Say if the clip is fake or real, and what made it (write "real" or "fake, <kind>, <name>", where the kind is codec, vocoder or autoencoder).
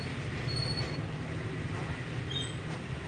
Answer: real